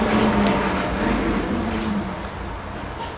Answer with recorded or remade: recorded